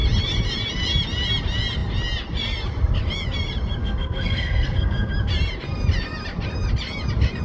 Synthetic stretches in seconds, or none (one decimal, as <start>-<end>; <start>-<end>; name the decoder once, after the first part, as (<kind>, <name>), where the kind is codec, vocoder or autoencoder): 3.8-5.1 (codec, SNAC)